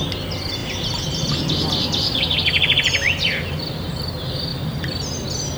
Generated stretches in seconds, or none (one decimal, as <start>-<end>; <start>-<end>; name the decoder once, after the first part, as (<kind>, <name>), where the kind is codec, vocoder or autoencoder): 0.6-3.7 (vocoder, BigVGAN v2); 4.5-5.6